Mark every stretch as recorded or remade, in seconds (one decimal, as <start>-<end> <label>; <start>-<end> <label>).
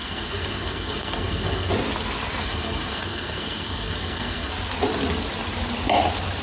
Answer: 0.0-1.7 remade; 1.7-2.4 recorded; 2.4-4.5 remade; 4.5-6.4 recorded